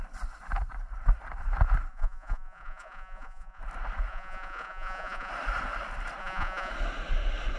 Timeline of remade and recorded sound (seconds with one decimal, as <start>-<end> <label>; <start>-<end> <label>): 0.0-1.9 recorded; 1.9-3.6 remade; 3.6-4.1 recorded; 4.1-5.3 remade; 5.3-6.2 recorded; 6.2-6.7 remade; 6.7-7.6 recorded

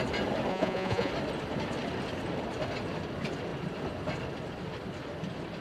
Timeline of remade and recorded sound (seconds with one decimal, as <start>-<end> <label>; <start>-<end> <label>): 0.0-0.5 recorded; 0.5-1.1 remade; 1.1-5.6 recorded

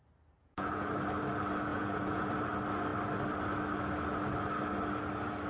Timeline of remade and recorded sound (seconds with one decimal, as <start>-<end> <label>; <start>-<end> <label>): 0.0-0.4 recorded; 0.4-0.9 remade; 0.9-1.7 recorded; 1.7-2.3 remade; 2.3-5.5 recorded

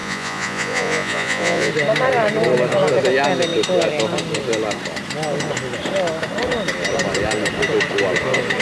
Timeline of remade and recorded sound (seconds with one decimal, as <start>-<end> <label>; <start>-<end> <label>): 0.0-1.7 remade; 1.7-8.6 recorded

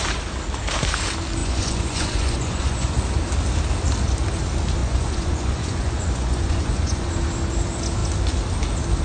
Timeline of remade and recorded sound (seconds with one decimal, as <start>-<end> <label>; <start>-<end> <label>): 0.0-1.4 recorded; 1.4-2.9 remade; 2.9-4.8 recorded; 4.8-7.1 remade; 7.1-9.0 recorded

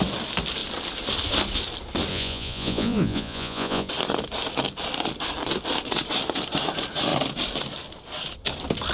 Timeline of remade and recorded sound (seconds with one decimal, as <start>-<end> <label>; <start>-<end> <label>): 0.0-2.1 recorded; 2.1-3.9 remade; 3.9-8.9 recorded

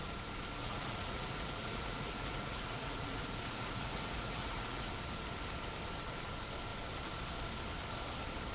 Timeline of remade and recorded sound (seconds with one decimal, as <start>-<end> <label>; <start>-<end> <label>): 0.0-0.6 recorded; 0.6-4.9 remade; 4.9-8.5 recorded

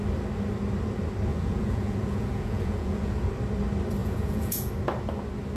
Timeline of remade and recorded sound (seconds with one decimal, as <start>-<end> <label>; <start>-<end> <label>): 0.0-1.3 recorded; 1.3-3.3 remade; 3.3-4.0 recorded; 4.0-4.7 remade; 4.7-5.6 recorded